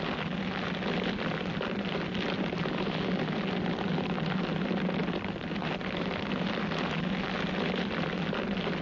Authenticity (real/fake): real